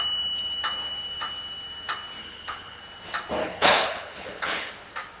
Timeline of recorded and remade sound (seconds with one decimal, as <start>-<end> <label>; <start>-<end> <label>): 0.0-2.2 recorded; 2.2-2.8 remade; 2.8-3.4 recorded; 3.4-4.7 remade; 4.7-5.2 recorded